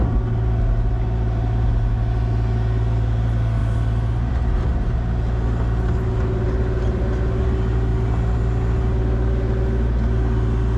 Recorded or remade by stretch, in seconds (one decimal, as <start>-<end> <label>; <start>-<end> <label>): 0.0-10.8 recorded